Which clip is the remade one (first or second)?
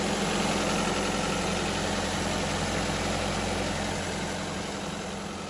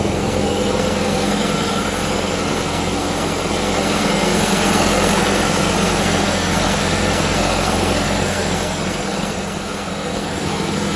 second